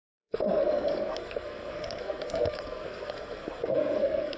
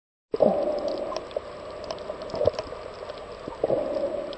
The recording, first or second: second